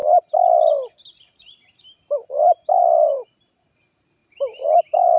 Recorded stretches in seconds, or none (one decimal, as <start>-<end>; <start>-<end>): 0.0-1.2